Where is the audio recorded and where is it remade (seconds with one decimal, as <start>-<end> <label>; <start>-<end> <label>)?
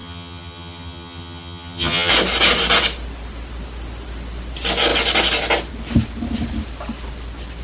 0.0-2.1 remade; 2.1-7.6 recorded